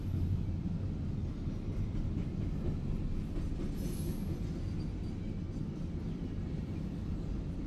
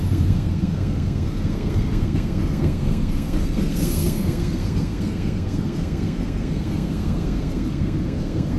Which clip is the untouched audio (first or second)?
first